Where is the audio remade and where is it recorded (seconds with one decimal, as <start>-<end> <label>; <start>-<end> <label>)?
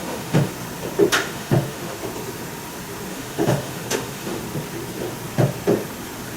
0.0-0.5 remade; 0.5-1.2 recorded; 1.2-2.0 remade; 2.0-3.1 recorded; 3.1-4.4 remade; 4.4-6.4 recorded